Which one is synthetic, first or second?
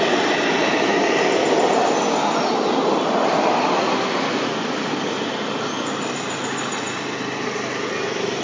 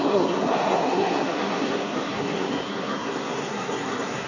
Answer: second